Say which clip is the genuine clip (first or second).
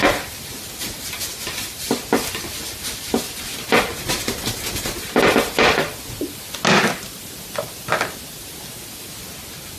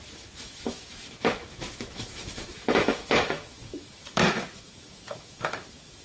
first